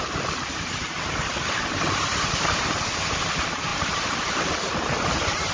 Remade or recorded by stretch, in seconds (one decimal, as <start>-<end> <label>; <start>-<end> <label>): 0.0-5.5 remade